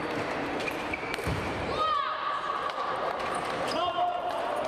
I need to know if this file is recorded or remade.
remade